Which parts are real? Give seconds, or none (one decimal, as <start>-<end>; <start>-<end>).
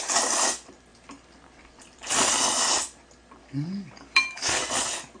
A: 0.0-3.4; 4.6-5.2